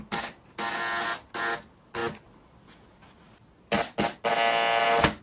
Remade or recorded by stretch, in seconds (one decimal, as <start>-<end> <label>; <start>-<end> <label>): 0.0-5.2 recorded